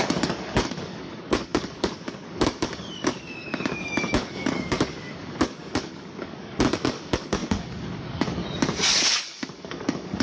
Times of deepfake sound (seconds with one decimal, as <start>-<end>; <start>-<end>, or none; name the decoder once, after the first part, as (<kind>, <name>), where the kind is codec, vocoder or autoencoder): 0.0-8.4 (codec, DAC); 8.9-10.2